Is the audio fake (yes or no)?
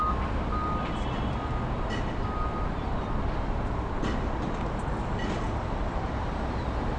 no